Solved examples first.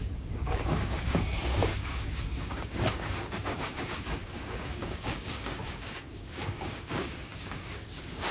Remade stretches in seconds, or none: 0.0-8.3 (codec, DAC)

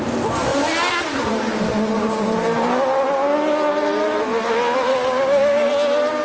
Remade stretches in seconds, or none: 4.9-5.7 (codec, DAC)

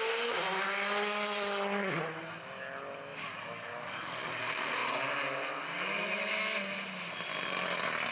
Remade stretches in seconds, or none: 3.1-4.3 (codec, DAC)

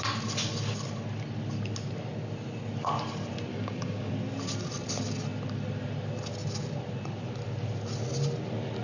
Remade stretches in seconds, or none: 3.5-4.1 (codec, DAC)

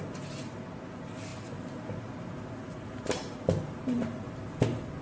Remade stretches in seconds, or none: none